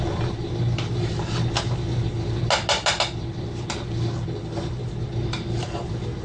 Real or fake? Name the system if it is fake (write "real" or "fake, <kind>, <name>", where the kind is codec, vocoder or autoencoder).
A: real